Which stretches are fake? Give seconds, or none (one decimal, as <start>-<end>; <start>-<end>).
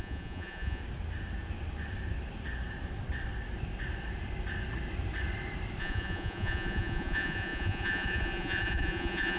0.0-0.8; 5.8-9.4